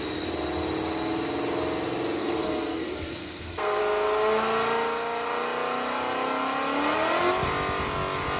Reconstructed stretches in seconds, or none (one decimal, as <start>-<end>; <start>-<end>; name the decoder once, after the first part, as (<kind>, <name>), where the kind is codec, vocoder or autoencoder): 2.2-3.8 (codec, SNAC)